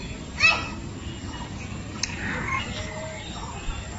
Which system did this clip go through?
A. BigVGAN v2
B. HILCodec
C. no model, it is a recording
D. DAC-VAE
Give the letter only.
C